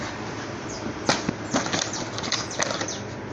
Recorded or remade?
recorded